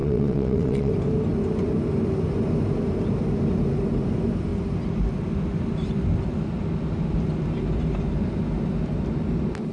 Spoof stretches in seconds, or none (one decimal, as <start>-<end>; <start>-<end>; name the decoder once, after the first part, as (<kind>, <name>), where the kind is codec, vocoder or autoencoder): 0.0-0.9 (vocoder, WaveNeXt)